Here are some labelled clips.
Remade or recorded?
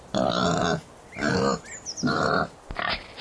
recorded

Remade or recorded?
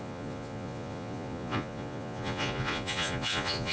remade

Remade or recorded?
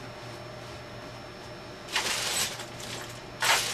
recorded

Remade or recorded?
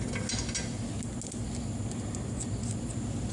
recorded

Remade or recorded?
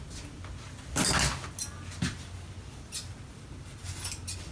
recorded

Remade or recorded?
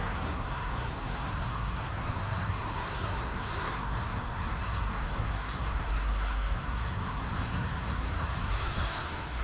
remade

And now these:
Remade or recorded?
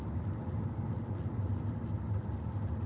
recorded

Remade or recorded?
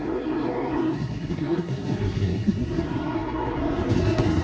remade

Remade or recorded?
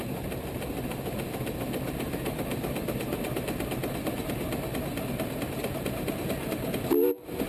recorded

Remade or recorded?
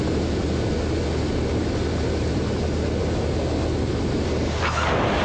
recorded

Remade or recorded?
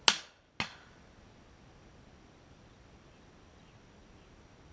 recorded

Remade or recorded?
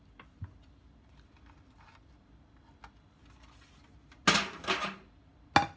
recorded